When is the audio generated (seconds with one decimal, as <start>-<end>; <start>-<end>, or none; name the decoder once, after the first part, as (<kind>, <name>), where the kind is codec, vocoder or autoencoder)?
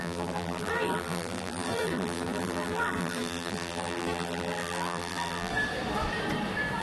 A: 0.0-5.5 (vocoder, BigVGAN v2)